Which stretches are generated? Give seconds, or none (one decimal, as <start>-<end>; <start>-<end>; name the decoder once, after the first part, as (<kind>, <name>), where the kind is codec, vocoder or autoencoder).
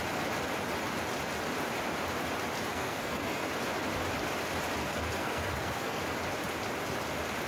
2.7-3.5 (codec, SNAC); 4.8-6.0